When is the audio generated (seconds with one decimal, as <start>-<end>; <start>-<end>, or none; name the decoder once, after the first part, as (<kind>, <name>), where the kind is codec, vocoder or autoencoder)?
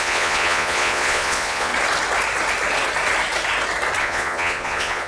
0.0-1.7 (vocoder, Vocos); 4.0-5.1